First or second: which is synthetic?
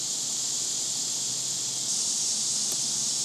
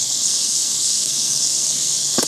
second